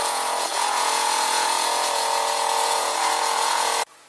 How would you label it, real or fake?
fake